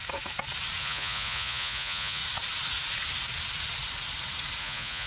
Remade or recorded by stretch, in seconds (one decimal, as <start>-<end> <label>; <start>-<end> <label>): 0.0-0.8 recorded; 0.8-2.2 remade; 2.2-4.6 recorded; 4.6-5.1 remade